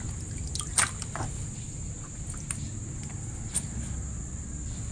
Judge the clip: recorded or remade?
recorded